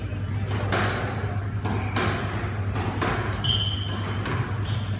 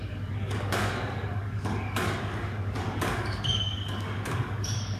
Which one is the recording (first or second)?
first